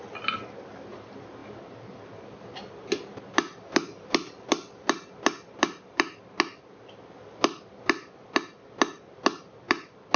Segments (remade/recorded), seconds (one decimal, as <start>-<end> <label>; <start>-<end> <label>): 0.0-10.2 recorded